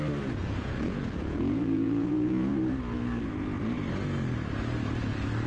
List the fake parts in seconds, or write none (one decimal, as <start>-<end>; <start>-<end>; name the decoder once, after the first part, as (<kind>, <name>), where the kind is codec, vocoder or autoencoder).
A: 0.4-2.5 (vocoder, Vocos)